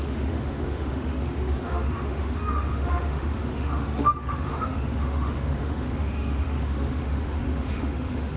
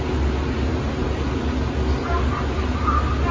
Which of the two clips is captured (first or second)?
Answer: second